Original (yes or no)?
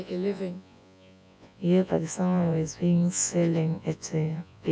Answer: no